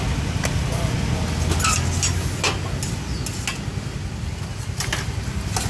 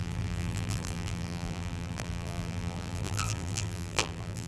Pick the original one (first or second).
first